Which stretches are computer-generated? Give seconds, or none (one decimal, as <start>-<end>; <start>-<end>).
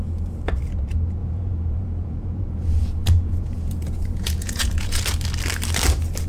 1.2-5.0